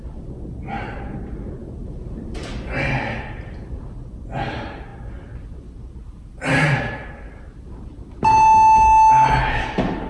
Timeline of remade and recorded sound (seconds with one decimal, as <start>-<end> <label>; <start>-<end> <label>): 0.0-10.1 recorded